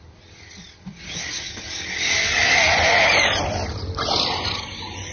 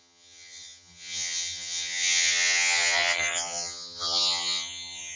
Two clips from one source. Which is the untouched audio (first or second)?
first